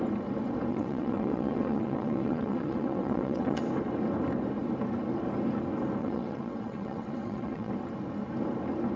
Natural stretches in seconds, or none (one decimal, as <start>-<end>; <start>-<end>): 0.0-0.7; 3.6-6.0; 7.7-9.0